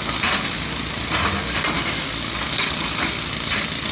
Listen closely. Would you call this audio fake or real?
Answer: real